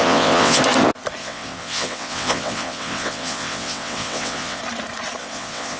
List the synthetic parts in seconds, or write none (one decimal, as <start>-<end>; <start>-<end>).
0.0-0.6; 1.2-4.6; 5.2-5.8